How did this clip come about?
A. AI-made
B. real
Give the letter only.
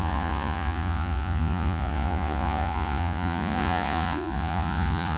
A